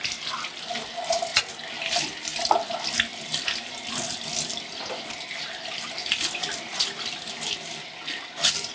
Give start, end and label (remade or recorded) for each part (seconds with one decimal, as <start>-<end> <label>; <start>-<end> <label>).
0.0-8.7 recorded